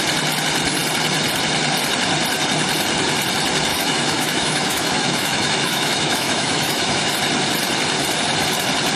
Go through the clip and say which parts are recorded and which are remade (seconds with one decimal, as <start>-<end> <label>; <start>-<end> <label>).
0.0-3.7 recorded; 3.7-7.1 remade; 7.1-9.0 recorded